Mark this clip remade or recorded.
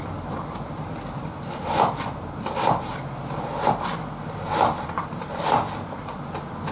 remade